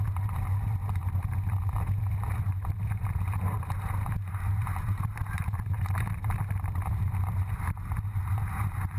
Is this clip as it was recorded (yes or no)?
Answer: no